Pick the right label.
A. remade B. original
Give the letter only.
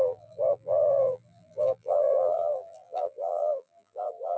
A